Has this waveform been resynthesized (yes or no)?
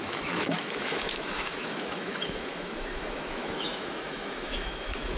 yes